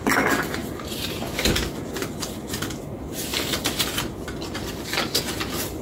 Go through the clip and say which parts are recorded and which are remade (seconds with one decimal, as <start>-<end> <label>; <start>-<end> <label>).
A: 0.0-0.6 recorded; 0.6-1.5 remade; 1.5-5.8 recorded